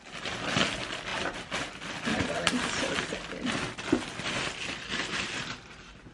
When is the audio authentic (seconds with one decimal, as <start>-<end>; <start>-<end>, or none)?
0.0-6.1